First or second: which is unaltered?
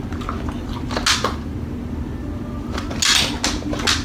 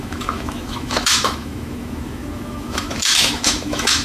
first